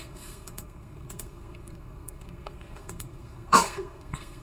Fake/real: fake